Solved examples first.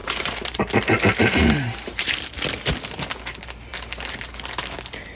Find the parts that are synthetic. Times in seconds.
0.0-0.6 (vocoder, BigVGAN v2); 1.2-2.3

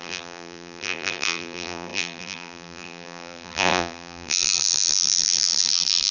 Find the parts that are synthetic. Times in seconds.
0.0-6.1 (vocoder, BigVGAN v2)

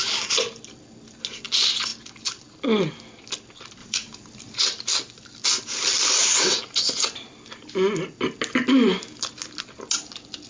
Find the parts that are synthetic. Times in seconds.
3.8-4.6 (vocoder, BigVGAN v2)

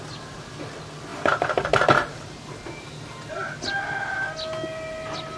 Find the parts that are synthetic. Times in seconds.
1.1-2.5 (vocoder, BigVGAN v2)